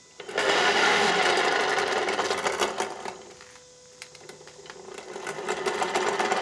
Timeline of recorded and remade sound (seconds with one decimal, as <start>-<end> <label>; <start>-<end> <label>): 0.0-0.4 recorded; 0.4-1.1 remade; 1.1-6.4 recorded